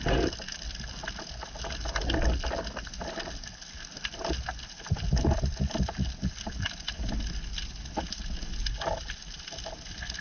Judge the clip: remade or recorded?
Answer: recorded